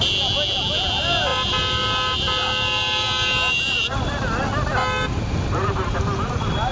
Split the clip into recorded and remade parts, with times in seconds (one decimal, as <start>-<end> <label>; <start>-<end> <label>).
0.0-6.7 recorded